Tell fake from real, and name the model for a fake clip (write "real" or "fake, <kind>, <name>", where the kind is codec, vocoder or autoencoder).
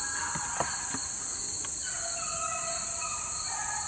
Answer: real